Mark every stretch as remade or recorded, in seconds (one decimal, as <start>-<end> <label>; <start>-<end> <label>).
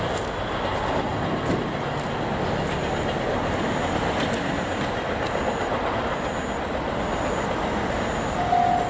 0.0-1.1 recorded; 1.1-1.7 remade; 1.7-8.9 recorded